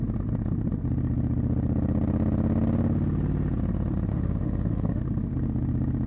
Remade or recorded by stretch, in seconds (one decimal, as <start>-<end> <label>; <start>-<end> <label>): 0.0-4.1 recorded; 4.1-5.0 remade; 5.0-6.1 recorded